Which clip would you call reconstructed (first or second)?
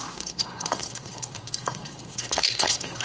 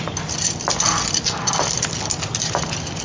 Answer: first